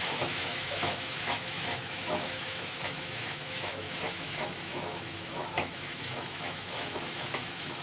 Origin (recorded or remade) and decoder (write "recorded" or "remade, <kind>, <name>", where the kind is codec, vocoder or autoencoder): remade, autoencoder, DAC-VAE